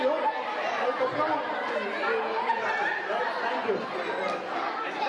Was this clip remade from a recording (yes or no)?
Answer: no